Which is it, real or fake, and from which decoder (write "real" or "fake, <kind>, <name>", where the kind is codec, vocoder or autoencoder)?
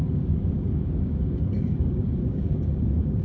fake, codec, DAC